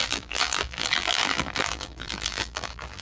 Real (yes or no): no